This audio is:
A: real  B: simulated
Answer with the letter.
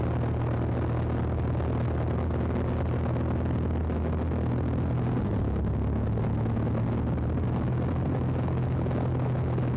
A